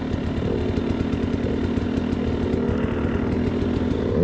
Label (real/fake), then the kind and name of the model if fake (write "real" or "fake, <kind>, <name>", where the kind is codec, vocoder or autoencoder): real